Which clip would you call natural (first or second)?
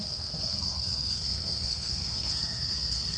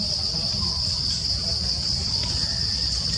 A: second